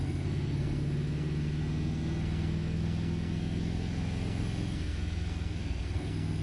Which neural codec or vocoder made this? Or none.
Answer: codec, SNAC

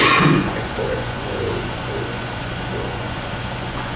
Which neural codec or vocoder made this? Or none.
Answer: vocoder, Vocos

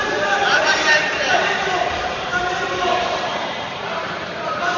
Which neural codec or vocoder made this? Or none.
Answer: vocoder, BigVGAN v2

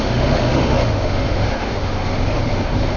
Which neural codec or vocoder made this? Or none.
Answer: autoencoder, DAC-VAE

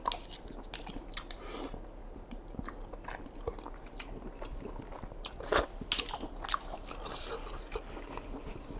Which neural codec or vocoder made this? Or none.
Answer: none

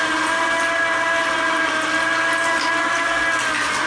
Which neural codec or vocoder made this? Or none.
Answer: none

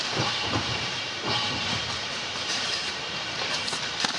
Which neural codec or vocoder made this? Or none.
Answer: vocoder, BigVGAN v2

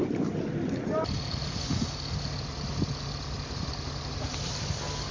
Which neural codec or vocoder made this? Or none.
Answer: none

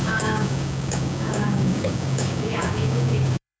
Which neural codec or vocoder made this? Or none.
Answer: codec, DAC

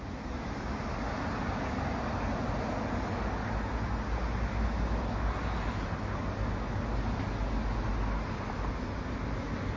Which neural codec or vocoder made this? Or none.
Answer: none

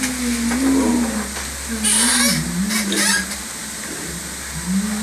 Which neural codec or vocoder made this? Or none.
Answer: none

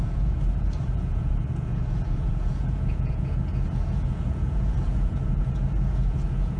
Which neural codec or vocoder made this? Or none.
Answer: vocoder, Vocos